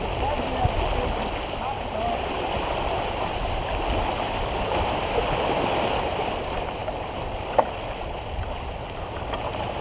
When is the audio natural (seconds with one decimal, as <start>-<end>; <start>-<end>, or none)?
0.0-9.8